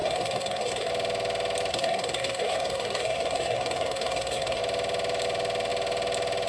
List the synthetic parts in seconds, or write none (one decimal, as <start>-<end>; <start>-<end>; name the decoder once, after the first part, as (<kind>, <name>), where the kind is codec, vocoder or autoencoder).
0.0-0.9 (codec, SNAC); 1.7-4.6

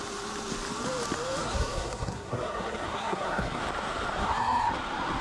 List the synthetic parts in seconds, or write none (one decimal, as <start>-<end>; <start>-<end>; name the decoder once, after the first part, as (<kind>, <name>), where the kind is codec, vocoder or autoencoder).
1.4-3.6 (codec, SNAC); 4.2-4.7

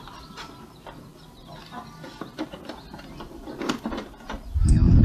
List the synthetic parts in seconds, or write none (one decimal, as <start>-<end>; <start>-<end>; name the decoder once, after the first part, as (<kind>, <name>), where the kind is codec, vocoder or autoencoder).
none

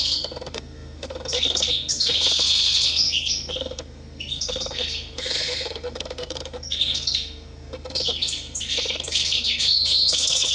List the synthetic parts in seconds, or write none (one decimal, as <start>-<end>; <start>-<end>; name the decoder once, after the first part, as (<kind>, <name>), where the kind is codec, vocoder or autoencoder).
0.0-10.5 (codec, SNAC)

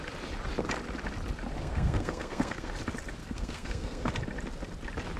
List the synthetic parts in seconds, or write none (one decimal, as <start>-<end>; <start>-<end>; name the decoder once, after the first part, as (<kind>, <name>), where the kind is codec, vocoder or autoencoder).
1.6-2.7 (codec, SNAC); 3.2-4.1